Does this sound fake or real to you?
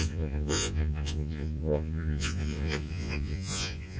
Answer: fake